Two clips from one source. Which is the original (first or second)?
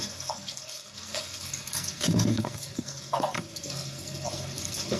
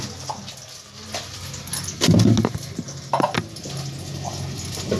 second